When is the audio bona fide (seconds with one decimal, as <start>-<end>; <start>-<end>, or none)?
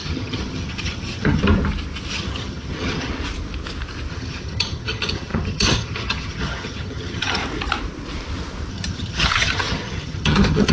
1.4-2.1; 3.1-4.1; 7.4-8.7